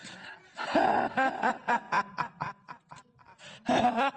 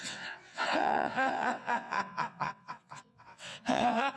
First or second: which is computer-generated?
second